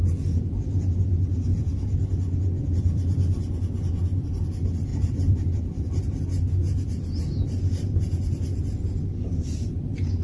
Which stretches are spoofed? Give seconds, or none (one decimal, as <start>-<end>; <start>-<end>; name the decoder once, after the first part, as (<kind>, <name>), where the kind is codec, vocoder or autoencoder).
1.5-3.5 (vocoder, BigVGAN v2); 4.9-6.2